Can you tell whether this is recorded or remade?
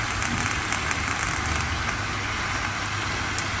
recorded